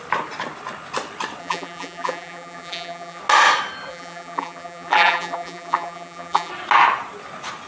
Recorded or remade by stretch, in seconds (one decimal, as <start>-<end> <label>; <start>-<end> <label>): 0.0-1.4 recorded; 1.4-3.2 remade; 3.2-3.9 recorded; 3.9-6.5 remade; 6.5-7.7 recorded